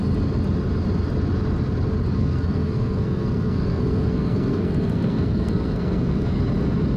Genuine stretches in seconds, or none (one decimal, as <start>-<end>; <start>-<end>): 0.0-2.2; 6.4-7.0